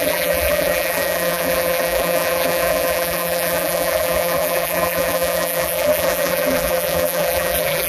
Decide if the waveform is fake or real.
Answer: fake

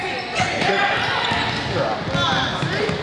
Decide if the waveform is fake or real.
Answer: real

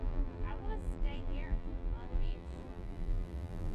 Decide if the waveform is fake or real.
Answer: fake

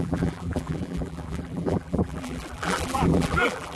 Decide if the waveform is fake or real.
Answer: fake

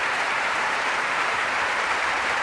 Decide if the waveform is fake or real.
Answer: fake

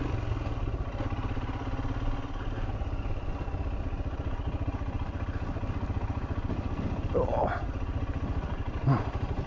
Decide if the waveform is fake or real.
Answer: real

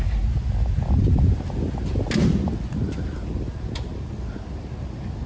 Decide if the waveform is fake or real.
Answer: real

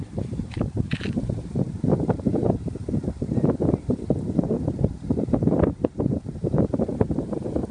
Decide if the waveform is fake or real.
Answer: fake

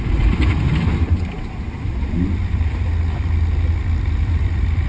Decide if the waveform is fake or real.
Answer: fake